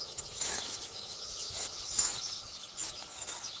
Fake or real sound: fake